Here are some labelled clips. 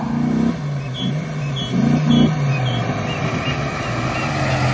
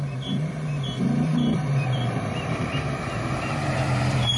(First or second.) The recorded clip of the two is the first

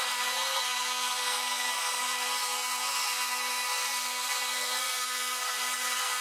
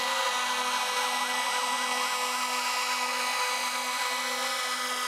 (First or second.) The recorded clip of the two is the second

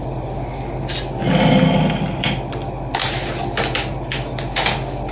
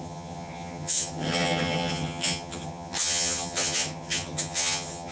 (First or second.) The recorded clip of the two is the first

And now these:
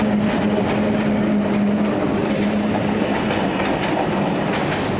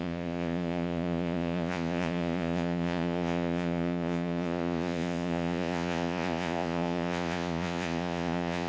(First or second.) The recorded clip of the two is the first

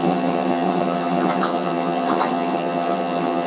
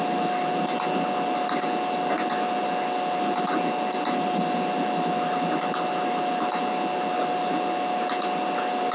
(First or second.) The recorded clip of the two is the second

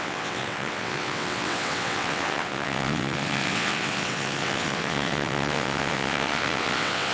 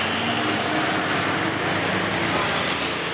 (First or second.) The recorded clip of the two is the second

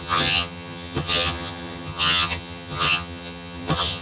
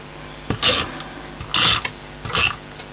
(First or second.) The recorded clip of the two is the second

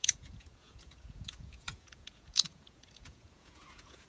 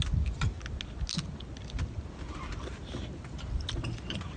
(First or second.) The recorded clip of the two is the second